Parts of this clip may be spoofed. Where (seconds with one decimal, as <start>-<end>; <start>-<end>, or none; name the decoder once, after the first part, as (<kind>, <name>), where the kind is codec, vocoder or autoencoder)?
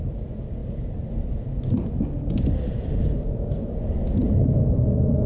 0.6-1.1 (vocoder, BigVGAN v2)